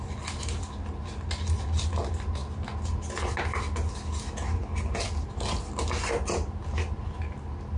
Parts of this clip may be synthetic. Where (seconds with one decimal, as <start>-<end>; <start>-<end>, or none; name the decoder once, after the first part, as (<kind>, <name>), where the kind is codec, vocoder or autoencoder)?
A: none